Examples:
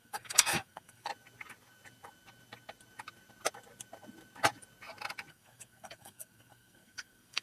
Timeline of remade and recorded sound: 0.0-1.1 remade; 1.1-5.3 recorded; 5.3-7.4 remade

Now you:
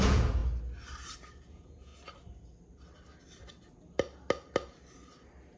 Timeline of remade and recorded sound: 0.0-0.4 remade; 0.4-1.5 recorded; 1.5-1.9 remade; 1.9-5.6 recorded